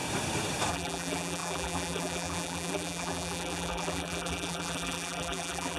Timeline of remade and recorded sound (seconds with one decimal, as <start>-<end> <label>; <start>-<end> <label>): 0.0-0.7 recorded; 0.7-5.8 remade